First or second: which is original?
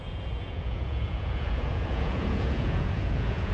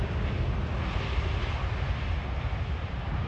second